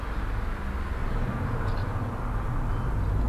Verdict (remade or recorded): recorded